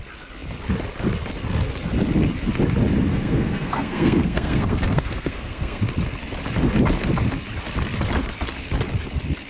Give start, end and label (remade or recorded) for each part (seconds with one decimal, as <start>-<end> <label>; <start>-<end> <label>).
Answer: 0.0-3.1 recorded; 3.1-5.8 remade; 5.8-9.5 recorded